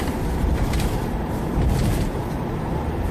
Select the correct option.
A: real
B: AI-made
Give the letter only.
B